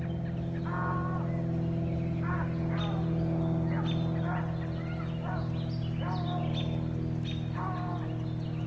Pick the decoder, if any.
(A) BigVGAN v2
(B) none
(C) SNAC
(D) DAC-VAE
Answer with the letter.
B